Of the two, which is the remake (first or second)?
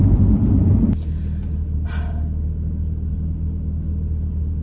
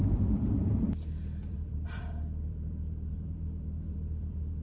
second